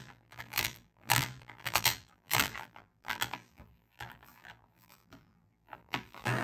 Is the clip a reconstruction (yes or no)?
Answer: yes